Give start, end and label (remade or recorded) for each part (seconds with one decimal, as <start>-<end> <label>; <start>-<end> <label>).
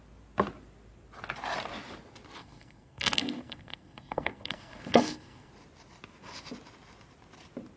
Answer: 0.0-2.4 recorded; 2.4-5.5 remade; 5.5-7.8 recorded